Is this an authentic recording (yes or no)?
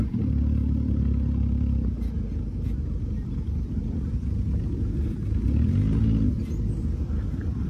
yes